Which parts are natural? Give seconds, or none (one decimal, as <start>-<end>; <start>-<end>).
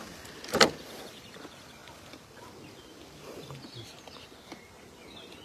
0.0-5.4